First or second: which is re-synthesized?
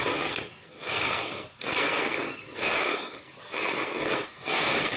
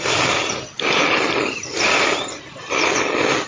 first